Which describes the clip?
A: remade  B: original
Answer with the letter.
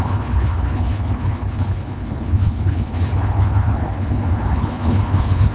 A